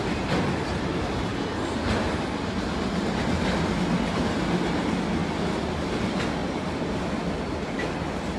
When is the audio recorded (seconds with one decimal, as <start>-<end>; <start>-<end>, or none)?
0.0-5.2; 6.0-6.4; 7.0-8.4